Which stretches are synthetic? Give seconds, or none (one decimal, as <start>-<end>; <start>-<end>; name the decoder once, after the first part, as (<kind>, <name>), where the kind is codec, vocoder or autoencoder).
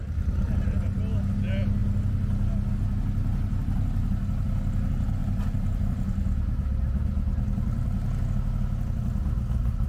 5.2-6.2 (vocoder, BigVGAN v2)